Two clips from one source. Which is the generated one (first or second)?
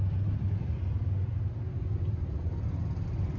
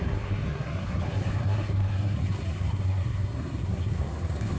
second